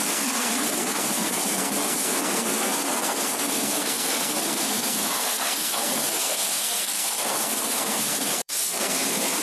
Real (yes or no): no